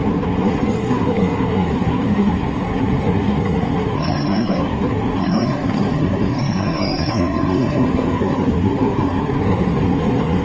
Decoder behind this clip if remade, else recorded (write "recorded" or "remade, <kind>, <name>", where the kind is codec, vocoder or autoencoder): remade, codec, SNAC